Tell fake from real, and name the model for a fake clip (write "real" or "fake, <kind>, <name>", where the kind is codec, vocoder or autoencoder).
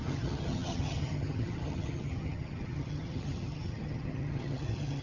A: fake, vocoder, HiFi-GAN